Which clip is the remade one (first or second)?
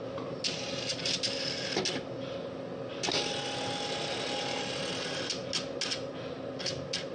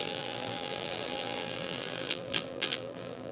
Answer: second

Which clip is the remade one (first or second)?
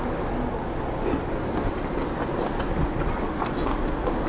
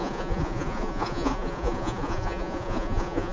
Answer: second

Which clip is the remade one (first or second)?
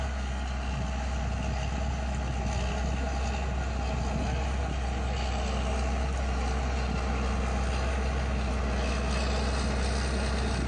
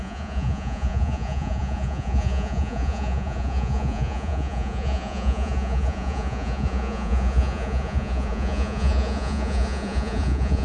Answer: second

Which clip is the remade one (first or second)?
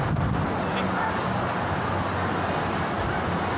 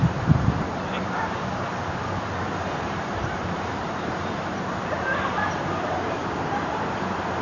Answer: second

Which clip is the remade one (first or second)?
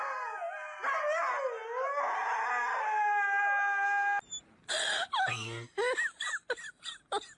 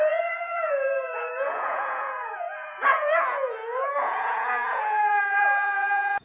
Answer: second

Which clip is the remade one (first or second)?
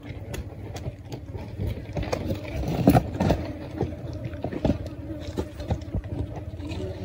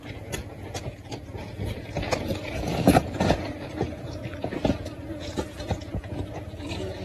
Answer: second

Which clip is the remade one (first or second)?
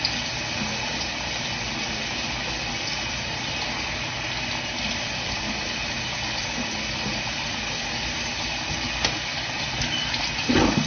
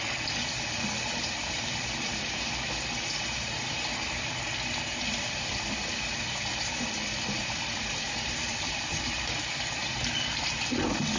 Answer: second